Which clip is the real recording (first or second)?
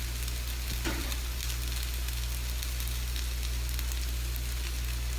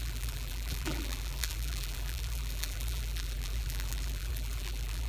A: first